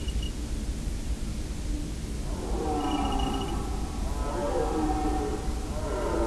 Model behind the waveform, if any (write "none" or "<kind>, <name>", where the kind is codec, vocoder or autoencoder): none